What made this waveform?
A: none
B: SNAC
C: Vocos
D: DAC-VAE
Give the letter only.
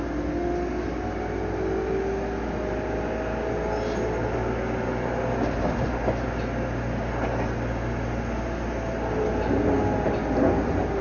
A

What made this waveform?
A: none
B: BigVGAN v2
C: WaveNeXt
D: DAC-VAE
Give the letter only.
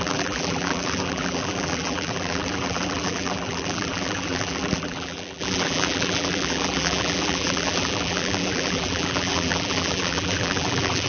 B